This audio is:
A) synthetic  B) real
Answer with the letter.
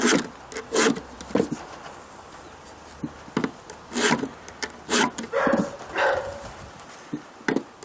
B